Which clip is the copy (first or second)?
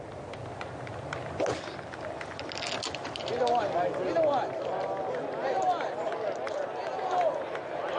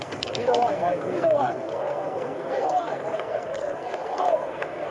second